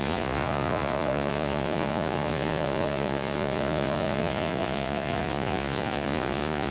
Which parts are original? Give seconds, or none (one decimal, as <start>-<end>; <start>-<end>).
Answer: none